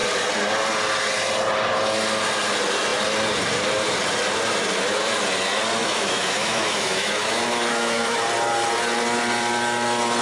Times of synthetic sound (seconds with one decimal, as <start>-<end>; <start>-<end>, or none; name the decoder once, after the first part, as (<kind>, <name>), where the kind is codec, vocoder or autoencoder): 5.8-8.2 (autoencoder, DAC-VAE)